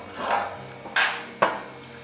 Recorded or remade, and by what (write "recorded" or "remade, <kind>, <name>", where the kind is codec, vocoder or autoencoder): recorded